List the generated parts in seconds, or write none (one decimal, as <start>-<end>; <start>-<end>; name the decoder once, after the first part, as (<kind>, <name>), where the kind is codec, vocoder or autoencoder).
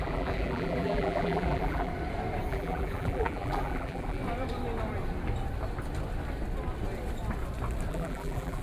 0.0-1.9 (vocoder, BigVGAN v2); 2.5-4.2; 7.9-8.6